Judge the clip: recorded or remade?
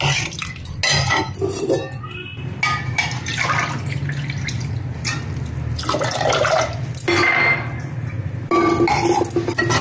recorded